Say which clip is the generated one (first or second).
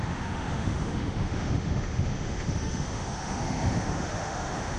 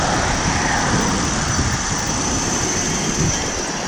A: first